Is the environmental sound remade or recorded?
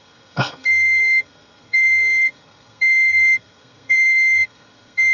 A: remade